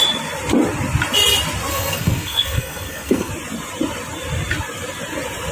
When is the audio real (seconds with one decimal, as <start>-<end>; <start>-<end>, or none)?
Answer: 0.0-1.7; 3.3-5.5